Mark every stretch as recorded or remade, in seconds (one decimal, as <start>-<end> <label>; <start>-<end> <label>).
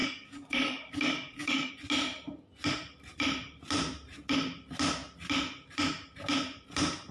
0.0-1.7 remade; 1.7-7.1 recorded